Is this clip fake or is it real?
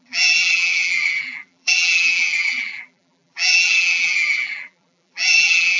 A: fake